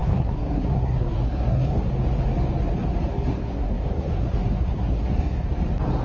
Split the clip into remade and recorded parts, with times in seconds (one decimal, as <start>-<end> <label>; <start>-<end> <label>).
0.0-1.9 remade; 1.9-3.1 recorded; 3.1-5.5 remade; 5.5-6.0 recorded